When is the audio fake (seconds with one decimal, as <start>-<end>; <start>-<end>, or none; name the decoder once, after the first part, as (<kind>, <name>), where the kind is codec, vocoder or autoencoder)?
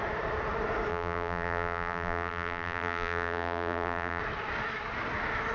0.9-4.2 (vocoder, BigVGAN v2)